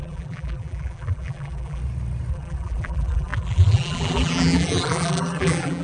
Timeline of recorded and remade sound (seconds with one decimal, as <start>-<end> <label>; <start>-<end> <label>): 0.0-1.8 remade; 1.8-2.3 recorded; 2.3-5.8 remade